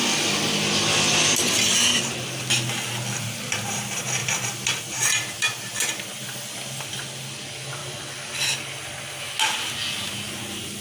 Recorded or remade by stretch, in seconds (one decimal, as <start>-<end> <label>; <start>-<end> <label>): 0.0-7.8 recorded; 7.8-9.0 remade; 9.0-10.8 recorded